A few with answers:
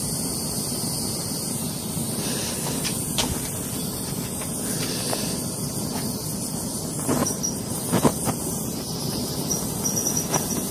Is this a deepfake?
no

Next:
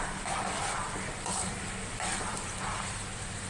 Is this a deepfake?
yes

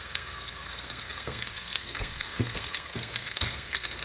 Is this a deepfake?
yes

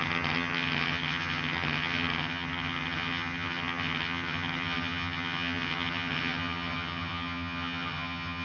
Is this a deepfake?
yes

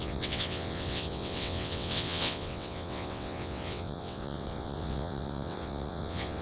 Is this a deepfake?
yes